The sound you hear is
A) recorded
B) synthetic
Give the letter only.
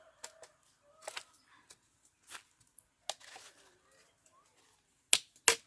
A